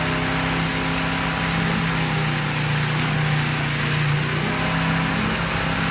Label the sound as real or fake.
real